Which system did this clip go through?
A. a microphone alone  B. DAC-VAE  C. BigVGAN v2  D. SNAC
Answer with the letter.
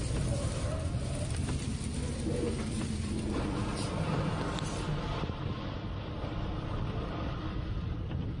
A